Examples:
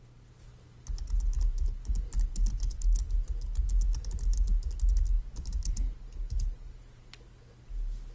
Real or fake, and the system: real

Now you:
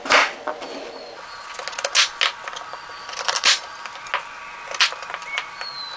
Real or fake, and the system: real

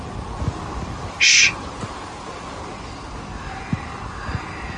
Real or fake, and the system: real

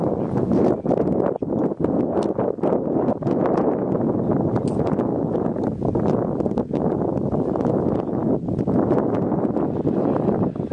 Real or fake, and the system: real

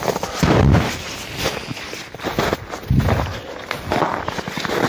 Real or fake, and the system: real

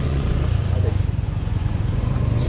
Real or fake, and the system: fake, vocoder, Vocos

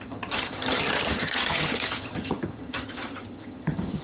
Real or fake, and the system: fake, vocoder, HiFi-GAN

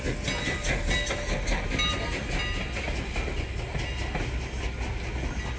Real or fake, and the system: real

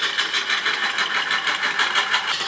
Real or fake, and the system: real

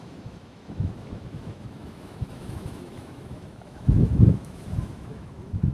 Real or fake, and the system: fake, autoencoder, DAC-VAE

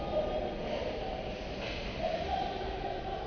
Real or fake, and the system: real